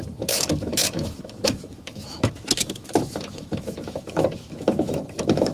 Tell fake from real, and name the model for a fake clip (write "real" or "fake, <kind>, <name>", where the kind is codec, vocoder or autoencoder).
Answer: fake, autoencoder, DAC-VAE